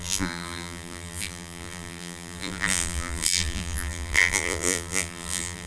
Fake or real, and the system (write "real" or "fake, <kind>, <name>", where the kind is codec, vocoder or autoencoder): fake, vocoder, BigVGAN v2